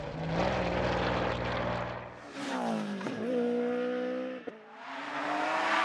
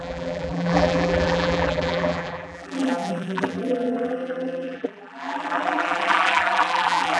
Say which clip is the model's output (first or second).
second